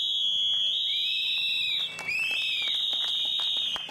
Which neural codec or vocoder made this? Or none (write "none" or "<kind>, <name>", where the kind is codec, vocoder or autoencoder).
none